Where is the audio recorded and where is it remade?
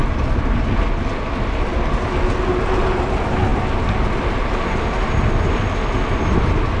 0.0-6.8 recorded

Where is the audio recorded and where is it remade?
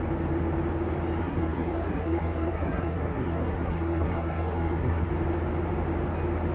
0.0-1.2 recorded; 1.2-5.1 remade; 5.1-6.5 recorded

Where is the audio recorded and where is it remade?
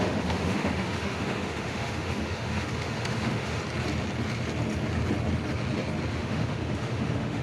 0.0-3.6 remade; 3.6-6.2 recorded; 6.2-7.4 remade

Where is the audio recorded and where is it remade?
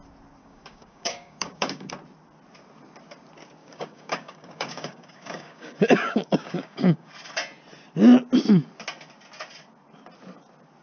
0.0-0.4 recorded; 0.4-1.9 remade; 1.9-3.6 recorded; 3.6-7.1 remade; 7.1-10.8 recorded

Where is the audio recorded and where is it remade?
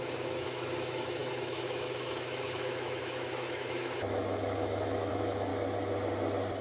0.0-5.5 remade; 5.5-6.6 recorded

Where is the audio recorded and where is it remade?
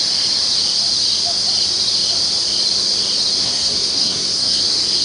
0.0-3.4 recorded; 3.4-4.6 remade; 4.6-5.0 recorded